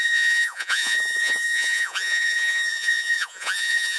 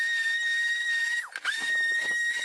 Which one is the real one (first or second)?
second